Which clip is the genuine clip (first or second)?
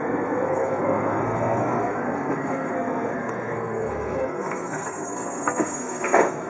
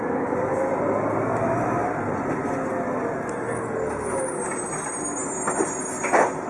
second